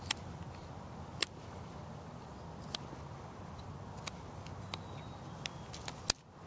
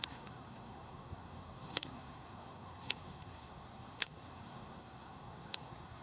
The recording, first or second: first